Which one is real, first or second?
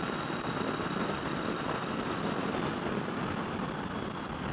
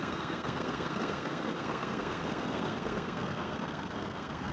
first